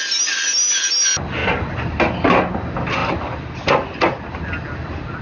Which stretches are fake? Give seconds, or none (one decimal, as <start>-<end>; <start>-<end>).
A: none